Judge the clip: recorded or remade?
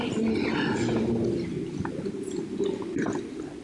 recorded